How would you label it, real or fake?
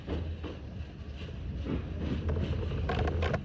real